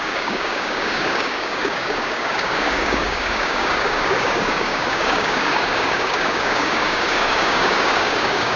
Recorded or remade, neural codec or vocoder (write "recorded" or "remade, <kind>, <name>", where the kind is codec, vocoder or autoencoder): remade, codec, DAC